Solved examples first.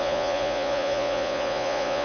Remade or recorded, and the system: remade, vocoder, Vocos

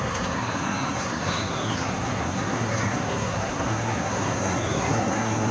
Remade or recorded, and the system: remade, codec, SNAC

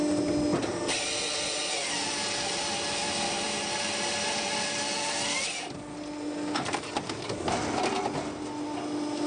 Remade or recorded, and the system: recorded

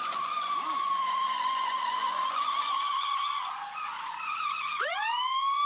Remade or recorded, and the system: remade, vocoder, Vocos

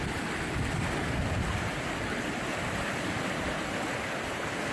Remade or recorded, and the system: recorded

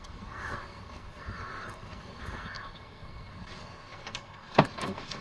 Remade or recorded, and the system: remade, codec, SNAC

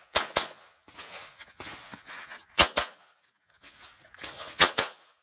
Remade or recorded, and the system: remade, vocoder, Vocos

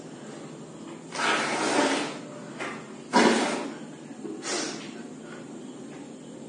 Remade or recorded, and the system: recorded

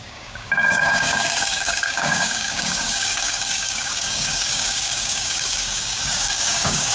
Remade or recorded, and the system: remade, codec, DAC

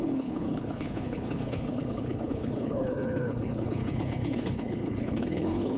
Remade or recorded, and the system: remade, codec, HILCodec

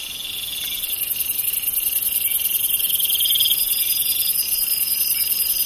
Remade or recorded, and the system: recorded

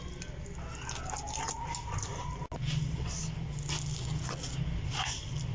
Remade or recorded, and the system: recorded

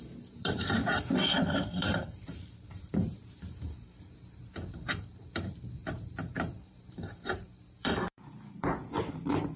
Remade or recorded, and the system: remade, vocoder, BigVGAN v2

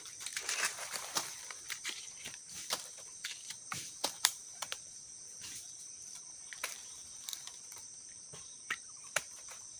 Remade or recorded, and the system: remade, vocoder, BigVGAN v2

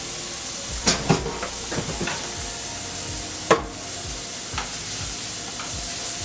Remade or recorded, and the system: recorded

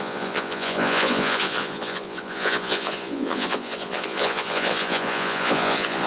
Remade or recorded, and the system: remade, vocoder, Vocos